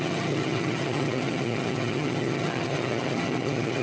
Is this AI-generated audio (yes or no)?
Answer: yes